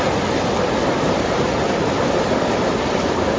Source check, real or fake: real